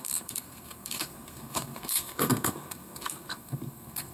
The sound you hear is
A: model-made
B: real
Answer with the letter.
A